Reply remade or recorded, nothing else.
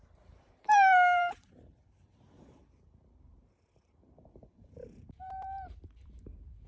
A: remade